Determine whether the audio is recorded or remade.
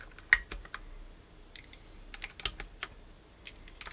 recorded